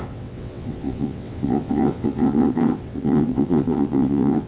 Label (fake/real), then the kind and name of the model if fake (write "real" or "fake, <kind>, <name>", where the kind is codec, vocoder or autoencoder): fake, vocoder, WaveNeXt